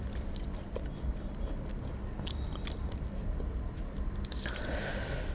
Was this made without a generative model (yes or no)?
no